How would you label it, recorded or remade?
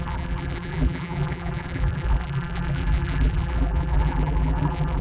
remade